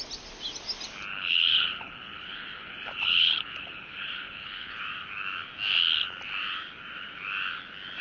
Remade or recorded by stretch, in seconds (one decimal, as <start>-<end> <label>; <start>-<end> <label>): 0.0-1.1 recorded; 1.1-4.8 remade; 4.8-8.0 recorded